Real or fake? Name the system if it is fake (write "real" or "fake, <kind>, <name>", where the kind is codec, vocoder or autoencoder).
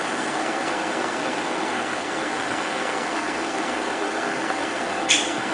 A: fake, codec, SNAC